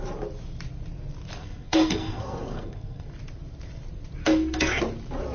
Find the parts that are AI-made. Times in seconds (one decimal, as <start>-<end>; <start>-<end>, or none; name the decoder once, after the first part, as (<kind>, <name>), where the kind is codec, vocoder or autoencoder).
1.4-3.1 (codec, SNAC); 4.2-4.8